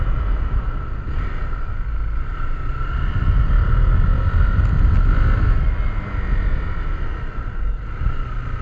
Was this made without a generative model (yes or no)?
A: yes